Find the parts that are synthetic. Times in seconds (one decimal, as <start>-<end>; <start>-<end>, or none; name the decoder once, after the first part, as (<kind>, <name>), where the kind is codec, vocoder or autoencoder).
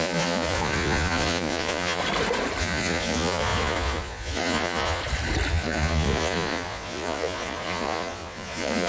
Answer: 0.0-2.0 (vocoder, Vocos); 2.6-5.0; 5.5-8.9